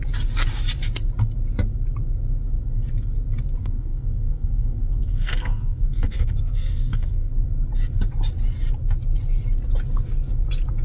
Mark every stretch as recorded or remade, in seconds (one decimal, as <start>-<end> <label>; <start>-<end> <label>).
0.0-3.6 recorded; 3.6-7.3 remade; 7.3-10.8 recorded